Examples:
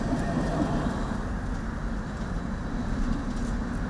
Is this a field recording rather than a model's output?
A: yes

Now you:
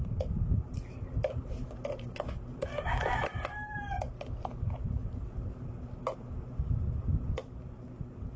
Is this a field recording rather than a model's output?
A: yes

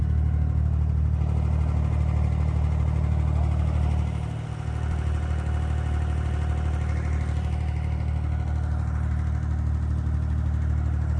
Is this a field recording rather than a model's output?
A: yes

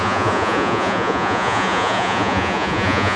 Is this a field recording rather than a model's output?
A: no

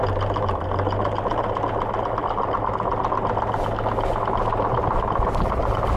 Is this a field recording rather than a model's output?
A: yes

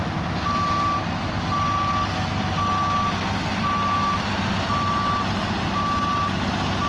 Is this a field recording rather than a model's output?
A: yes